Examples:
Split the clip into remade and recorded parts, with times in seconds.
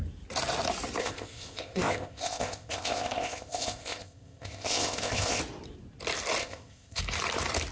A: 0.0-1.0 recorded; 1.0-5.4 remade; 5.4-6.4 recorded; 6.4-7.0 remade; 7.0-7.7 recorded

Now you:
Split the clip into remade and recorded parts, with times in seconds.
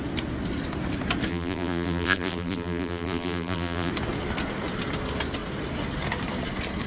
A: 0.0-1.3 recorded; 1.3-3.9 remade; 3.9-6.9 recorded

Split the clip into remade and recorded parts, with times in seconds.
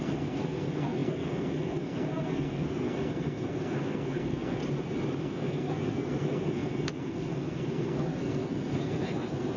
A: 0.0-4.6 remade; 4.6-5.2 recorded; 5.2-9.6 remade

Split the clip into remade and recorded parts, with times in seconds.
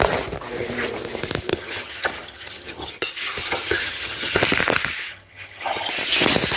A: 0.0-1.5 recorded; 1.5-2.9 remade; 2.9-3.4 recorded; 3.4-4.4 remade; 4.4-5.1 recorded; 5.1-5.9 remade; 5.9-6.6 recorded